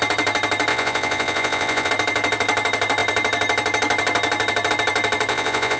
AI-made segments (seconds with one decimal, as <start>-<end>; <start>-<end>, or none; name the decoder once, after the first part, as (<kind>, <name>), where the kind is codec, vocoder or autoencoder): 0.7-1.9 (vocoder, Vocos); 5.3-5.8